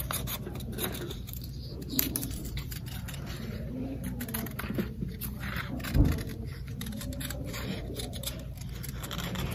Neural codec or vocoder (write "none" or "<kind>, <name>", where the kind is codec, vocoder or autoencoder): vocoder, BigVGAN v2